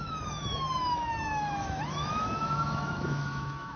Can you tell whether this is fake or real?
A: fake